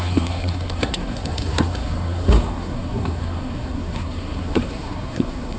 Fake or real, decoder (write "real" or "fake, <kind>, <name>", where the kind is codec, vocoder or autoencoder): fake, codec, SNAC